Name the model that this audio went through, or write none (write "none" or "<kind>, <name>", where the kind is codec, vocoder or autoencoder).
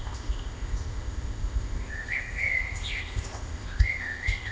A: codec, ZipCodec